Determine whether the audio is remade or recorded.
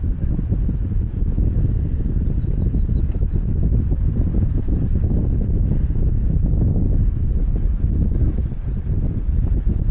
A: recorded